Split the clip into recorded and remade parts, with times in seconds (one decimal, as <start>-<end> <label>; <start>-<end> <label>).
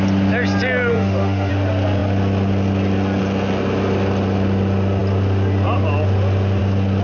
0.0-0.9 recorded; 0.9-1.5 remade; 1.5-7.0 recorded